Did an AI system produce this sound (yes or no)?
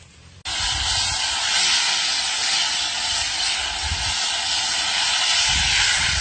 no